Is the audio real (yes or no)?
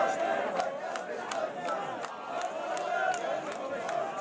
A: yes